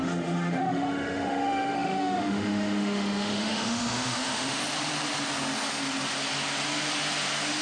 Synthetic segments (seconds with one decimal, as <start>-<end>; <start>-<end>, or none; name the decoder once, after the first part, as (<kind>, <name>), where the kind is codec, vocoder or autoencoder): 0.0-4.6 (autoencoder, DAC-VAE)